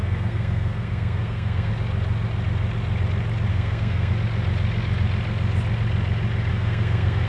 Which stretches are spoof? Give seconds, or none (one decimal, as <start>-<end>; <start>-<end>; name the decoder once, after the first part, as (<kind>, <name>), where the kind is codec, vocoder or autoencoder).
0.0-1.7 (codec, SNAC); 3.5-4.1; 6.5-7.3